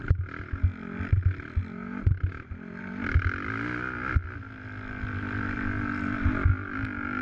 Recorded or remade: recorded